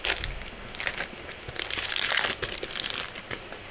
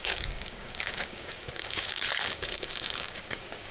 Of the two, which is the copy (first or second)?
second